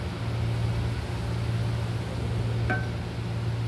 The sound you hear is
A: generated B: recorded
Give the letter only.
B